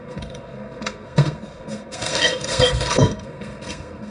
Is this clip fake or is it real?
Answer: fake